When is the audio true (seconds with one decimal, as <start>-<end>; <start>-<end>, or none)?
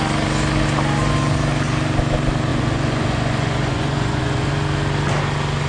0.0-2.5; 4.5-5.7